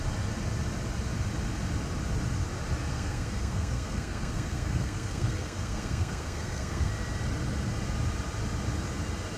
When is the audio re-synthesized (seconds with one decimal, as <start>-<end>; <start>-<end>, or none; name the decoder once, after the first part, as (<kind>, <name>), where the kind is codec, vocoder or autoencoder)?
2.9-6.9 (codec, SNAC)